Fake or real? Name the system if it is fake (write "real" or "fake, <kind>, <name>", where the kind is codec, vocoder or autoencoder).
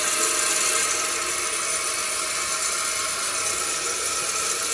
real